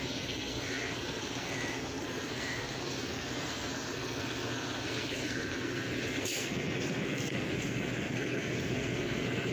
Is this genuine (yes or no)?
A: no